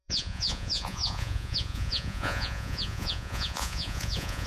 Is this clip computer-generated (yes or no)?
yes